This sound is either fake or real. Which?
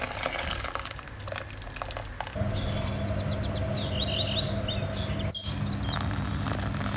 real